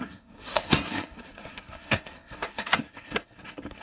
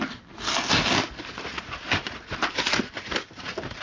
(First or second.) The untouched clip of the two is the second